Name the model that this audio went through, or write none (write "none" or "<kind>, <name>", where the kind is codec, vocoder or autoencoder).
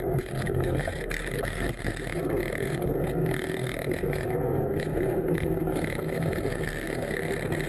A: codec, SNAC